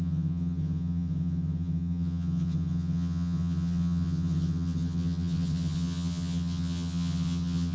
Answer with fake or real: fake